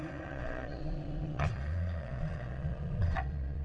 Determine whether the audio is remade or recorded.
remade